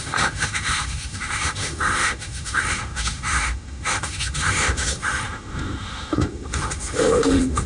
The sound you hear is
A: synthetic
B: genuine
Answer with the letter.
A